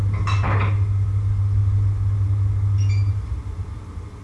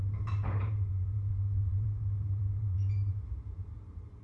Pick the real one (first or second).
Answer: first